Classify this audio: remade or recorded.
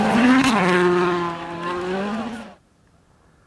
recorded